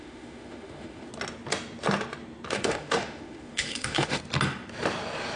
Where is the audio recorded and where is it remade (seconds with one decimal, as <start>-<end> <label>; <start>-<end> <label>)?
0.0-1.1 remade; 1.1-2.5 recorded; 2.5-4.2 remade; 4.2-5.4 recorded